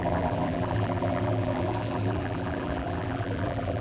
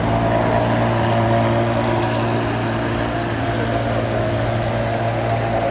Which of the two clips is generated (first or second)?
first